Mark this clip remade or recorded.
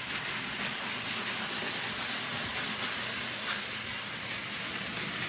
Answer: recorded